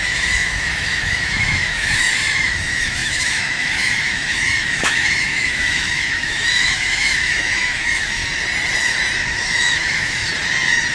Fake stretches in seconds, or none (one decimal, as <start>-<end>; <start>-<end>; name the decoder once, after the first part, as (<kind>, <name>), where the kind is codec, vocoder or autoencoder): 0.0-8.2 (autoencoder, DAC-VAE); 9.2-10.3